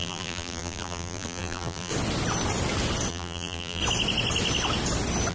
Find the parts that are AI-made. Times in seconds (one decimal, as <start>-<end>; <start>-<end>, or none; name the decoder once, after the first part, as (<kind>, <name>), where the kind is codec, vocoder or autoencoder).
0.0-1.9 (vocoder, BigVGAN v2); 3.1-3.8